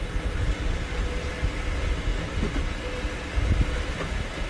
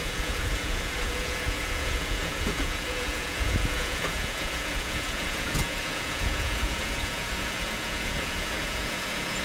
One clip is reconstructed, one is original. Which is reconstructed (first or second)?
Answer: second